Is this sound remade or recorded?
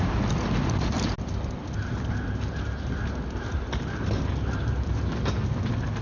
recorded